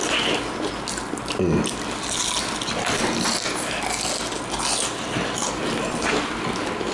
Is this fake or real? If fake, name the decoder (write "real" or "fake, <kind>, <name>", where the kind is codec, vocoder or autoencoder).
real